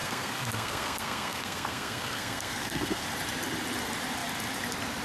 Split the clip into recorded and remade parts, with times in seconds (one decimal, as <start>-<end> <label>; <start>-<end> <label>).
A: 0.0-3.0 remade; 3.0-5.0 recorded